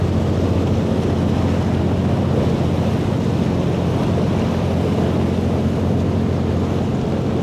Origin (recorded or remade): recorded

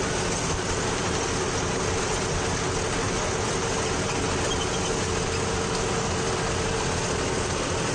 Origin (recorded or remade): recorded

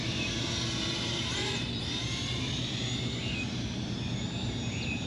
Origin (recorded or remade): remade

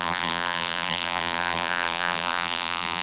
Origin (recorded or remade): remade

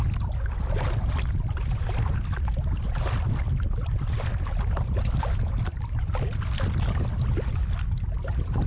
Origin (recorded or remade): recorded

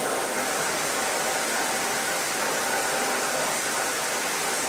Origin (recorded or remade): recorded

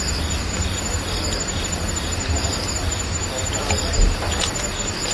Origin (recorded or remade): recorded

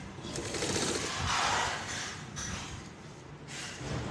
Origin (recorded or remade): remade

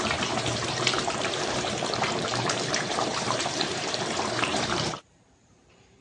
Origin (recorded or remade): remade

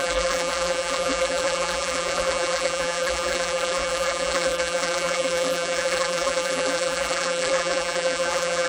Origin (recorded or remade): remade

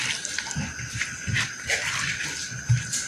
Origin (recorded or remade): recorded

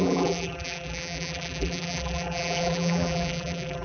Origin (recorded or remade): remade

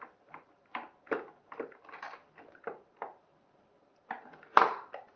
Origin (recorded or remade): remade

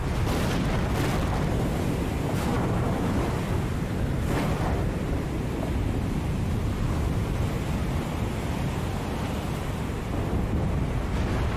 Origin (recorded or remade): recorded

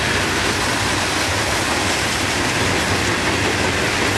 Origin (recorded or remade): recorded